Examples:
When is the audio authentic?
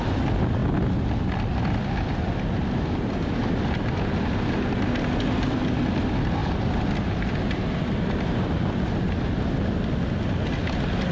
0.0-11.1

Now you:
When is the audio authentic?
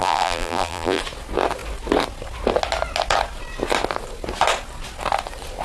1.0-5.6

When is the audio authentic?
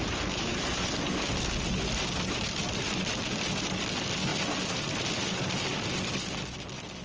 0.5-1.7; 4.3-4.8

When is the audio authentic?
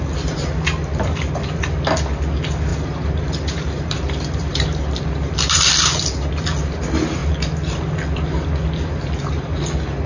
0.0-2.7; 6.0-10.1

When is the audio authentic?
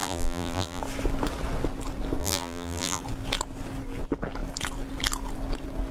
0.8-2.2; 3.0-5.9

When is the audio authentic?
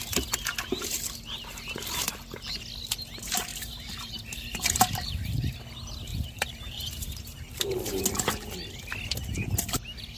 0.0-3.5; 5.5-6.1; 8.0-10.2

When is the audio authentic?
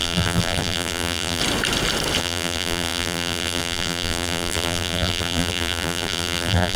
1.4-2.2